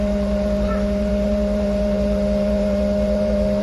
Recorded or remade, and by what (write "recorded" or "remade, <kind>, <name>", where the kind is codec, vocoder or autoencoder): remade, vocoder, BigVGAN v2